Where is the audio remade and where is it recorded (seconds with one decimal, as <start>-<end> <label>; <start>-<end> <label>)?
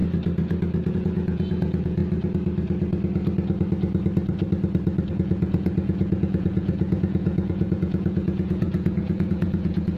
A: 0.0-0.9 recorded; 0.9-2.0 remade; 2.0-5.1 recorded; 5.1-10.0 remade